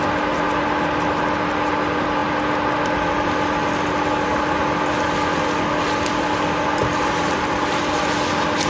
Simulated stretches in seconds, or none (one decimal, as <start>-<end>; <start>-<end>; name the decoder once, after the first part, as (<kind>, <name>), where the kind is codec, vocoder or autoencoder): none